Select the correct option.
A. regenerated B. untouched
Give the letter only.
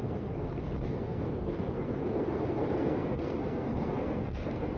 A